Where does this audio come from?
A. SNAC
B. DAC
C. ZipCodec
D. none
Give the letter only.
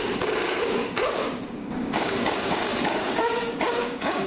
B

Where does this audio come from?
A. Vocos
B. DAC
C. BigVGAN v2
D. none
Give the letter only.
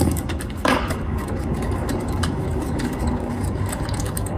B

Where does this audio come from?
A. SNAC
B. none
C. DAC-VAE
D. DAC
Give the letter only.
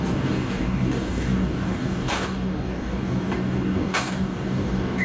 D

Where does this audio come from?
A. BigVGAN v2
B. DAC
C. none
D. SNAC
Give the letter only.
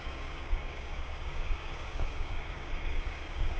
B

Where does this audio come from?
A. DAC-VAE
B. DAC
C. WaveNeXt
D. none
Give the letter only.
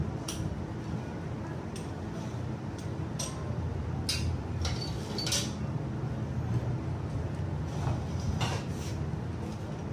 D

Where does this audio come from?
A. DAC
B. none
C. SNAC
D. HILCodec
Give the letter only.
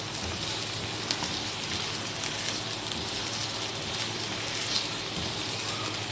B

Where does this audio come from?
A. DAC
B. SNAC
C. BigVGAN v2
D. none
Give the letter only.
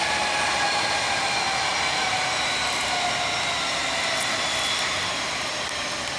D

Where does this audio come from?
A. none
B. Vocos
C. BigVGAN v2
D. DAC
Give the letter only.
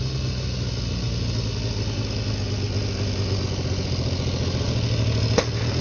A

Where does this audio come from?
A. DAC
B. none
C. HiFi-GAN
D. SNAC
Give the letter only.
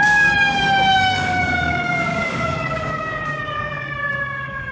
A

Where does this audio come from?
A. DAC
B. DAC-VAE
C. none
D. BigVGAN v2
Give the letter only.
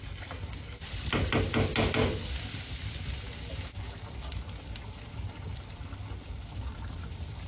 C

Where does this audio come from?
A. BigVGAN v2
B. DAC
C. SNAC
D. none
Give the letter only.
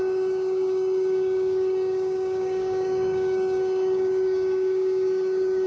B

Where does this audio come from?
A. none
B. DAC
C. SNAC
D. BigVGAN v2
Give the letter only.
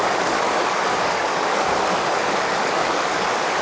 B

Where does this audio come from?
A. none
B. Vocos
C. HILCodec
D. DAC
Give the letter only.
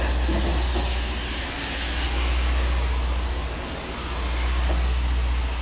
A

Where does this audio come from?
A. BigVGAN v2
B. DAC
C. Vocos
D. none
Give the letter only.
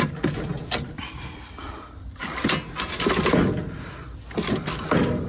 D